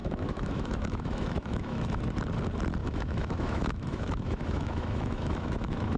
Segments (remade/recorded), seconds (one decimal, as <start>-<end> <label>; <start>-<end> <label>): 0.0-2.0 remade; 2.0-2.8 recorded; 2.8-6.0 remade